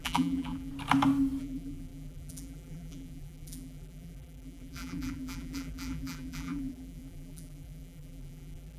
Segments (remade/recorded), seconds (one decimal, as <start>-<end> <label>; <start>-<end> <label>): 0.0-0.7 remade; 0.7-1.4 recorded; 1.4-8.8 remade